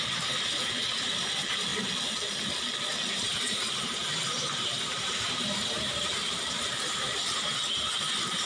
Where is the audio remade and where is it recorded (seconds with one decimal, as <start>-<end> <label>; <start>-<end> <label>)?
0.0-1.7 remade; 1.7-3.1 recorded; 3.1-8.5 remade

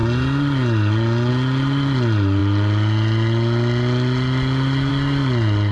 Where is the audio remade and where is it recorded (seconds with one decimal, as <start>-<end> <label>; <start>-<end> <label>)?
0.0-5.7 recorded